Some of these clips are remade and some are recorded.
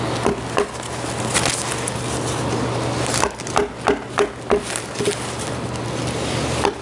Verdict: recorded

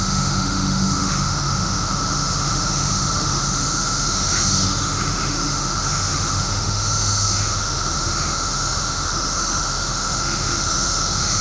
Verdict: remade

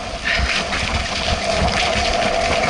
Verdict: recorded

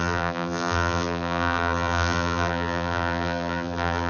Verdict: remade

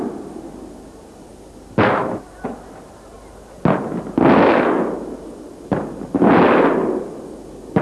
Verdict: recorded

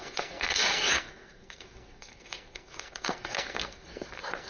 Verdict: remade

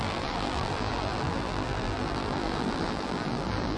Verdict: remade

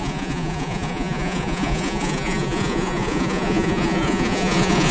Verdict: remade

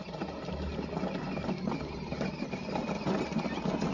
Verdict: recorded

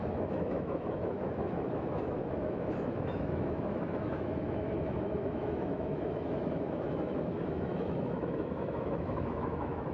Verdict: remade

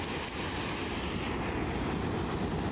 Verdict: recorded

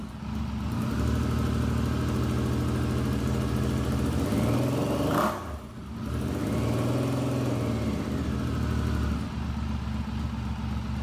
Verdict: recorded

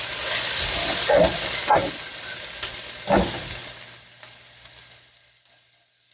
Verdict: recorded